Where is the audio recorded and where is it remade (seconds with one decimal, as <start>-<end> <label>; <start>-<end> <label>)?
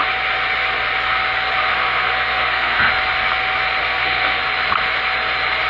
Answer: 0.0-1.7 recorded; 1.7-2.9 remade; 2.9-3.8 recorded; 3.8-4.4 remade; 4.4-5.7 recorded